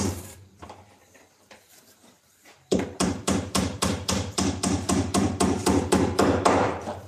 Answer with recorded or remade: remade